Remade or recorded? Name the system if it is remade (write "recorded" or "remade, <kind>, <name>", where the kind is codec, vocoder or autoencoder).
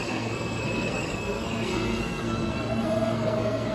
remade, codec, SNAC